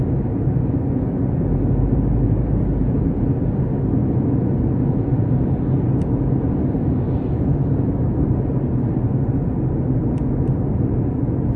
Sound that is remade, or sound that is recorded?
recorded